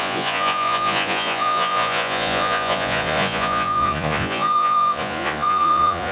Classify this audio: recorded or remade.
remade